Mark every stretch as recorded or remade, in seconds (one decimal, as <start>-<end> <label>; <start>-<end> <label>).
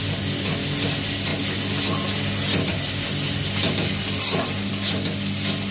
0.0-5.7 recorded